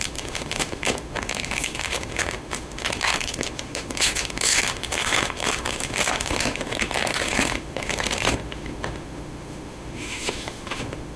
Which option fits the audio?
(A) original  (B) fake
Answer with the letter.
B